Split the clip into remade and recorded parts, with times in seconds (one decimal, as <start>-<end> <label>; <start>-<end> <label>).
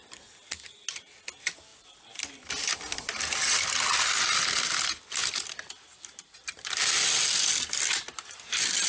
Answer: 0.0-8.9 recorded